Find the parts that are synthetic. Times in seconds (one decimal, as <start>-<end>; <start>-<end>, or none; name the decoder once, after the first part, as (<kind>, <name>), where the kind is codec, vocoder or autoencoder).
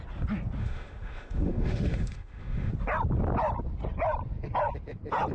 0.6-2.7 (autoencoder, DAC-VAE)